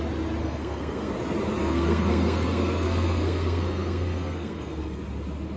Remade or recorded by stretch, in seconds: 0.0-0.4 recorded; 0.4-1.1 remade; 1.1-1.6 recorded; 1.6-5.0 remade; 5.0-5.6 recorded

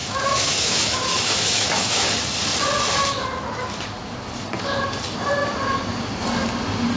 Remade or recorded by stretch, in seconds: 0.0-2.1 remade; 2.1-7.0 recorded